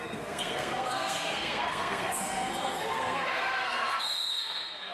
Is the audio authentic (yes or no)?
no